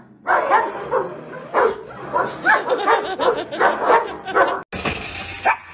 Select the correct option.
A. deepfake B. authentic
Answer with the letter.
B